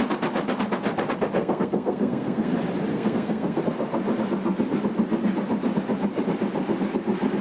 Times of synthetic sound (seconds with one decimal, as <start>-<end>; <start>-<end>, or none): 1.4-2.5; 2.9-3.6

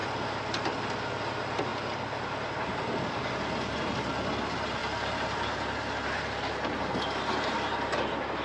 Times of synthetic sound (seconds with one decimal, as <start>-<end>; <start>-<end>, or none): none